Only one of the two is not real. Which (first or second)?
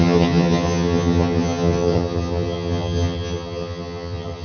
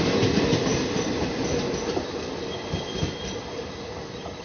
first